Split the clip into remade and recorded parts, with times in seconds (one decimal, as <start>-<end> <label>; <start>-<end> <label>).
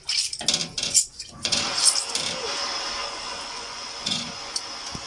0.0-0.6 recorded; 0.6-1.6 remade; 1.6-3.0 recorded; 3.0-4.6 remade; 4.6-5.1 recorded